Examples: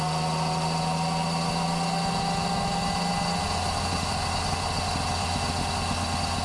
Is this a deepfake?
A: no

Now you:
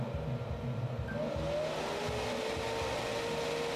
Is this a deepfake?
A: no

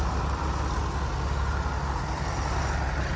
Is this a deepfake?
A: no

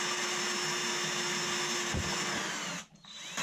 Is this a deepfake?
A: no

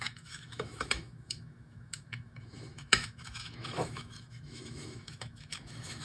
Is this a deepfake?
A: yes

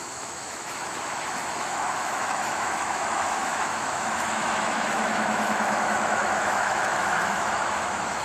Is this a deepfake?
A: yes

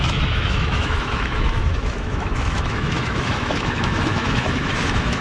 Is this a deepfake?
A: yes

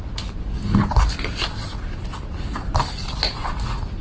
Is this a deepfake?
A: no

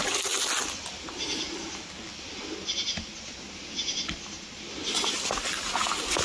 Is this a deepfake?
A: no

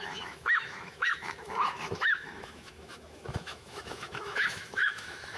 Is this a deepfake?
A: yes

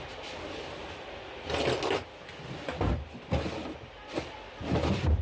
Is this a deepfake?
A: no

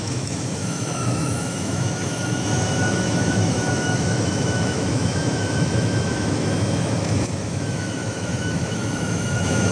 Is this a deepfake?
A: yes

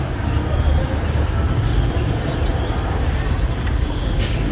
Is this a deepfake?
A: no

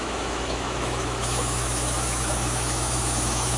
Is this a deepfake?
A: yes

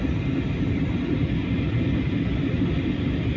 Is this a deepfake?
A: no